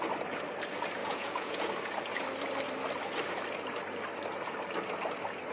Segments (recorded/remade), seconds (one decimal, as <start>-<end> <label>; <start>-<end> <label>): 0.0-1.0 recorded; 1.0-1.7 remade; 1.7-5.5 recorded